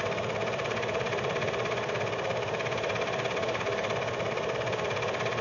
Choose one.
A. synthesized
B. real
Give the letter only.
B